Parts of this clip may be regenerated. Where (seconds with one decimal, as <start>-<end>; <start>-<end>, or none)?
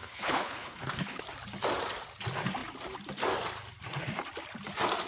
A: 0.0-1.2